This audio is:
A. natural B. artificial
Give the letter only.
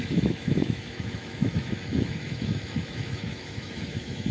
B